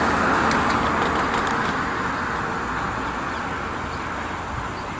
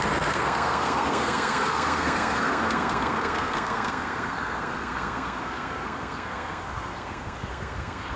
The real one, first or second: first